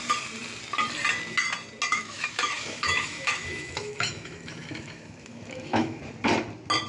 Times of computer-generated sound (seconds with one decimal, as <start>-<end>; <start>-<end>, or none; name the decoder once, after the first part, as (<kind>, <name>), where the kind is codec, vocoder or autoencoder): 1.9-6.0 (autoencoder, DAC-VAE)